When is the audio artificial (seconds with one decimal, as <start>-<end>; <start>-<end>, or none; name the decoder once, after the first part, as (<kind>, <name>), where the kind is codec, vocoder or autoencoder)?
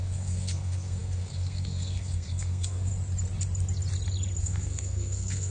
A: 0.0-2.9 (codec, SNAC); 4.4-5.5